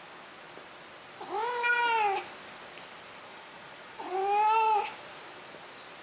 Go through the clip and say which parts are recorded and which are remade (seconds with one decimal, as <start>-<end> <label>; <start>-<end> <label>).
0.0-3.3 recorded; 3.3-4.1 remade; 4.1-6.0 recorded